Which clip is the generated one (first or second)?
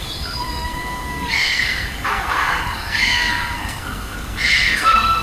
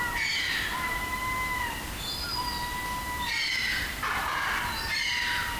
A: first